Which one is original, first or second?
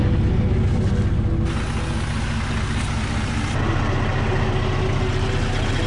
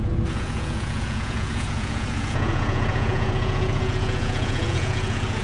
first